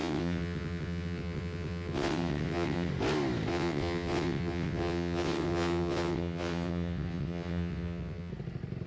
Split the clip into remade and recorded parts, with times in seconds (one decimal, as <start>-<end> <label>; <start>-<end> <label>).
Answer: 0.0-2.9 remade; 2.9-3.5 recorded; 3.5-8.3 remade; 8.3-8.9 recorded